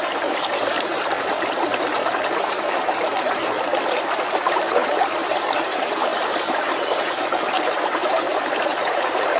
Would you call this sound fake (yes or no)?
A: yes